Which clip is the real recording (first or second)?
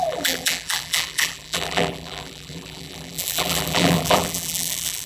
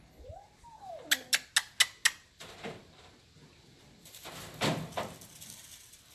second